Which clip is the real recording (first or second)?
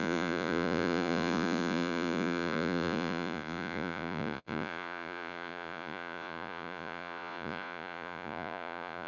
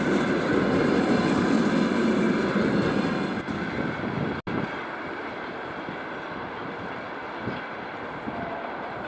second